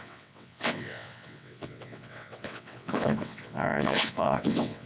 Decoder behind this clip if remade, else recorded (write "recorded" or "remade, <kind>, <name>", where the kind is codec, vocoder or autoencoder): remade, vocoder, WaveNeXt